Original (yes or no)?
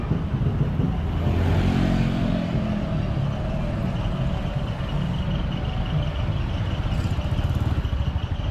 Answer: yes